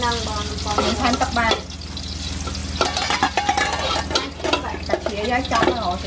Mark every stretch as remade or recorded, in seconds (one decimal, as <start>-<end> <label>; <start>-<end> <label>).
0.0-6.1 recorded